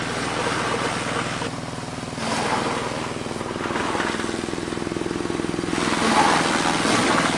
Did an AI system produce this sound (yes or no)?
no